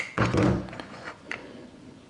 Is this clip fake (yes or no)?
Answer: yes